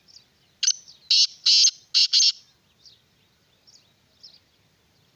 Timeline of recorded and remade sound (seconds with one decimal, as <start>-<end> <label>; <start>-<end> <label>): 0.0-5.2 recorded